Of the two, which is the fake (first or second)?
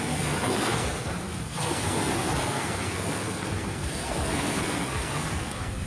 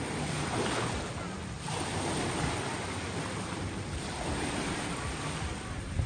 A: first